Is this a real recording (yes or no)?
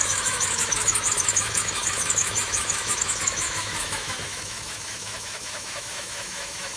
no